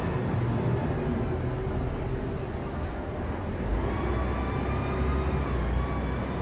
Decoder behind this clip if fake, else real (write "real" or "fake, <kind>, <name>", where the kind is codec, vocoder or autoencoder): real